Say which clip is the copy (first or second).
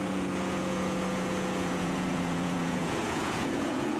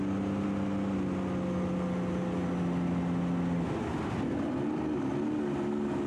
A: first